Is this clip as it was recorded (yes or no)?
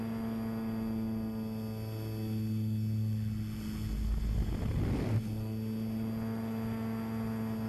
yes